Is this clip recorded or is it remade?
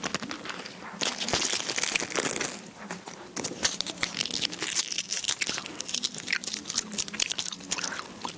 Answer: recorded